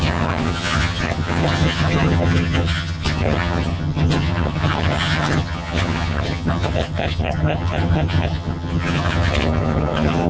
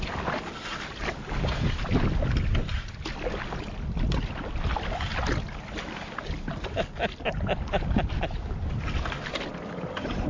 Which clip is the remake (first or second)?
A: first